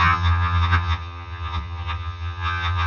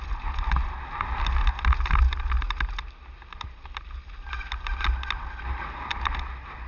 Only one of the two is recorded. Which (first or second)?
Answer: second